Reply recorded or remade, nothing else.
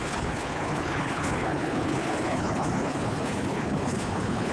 remade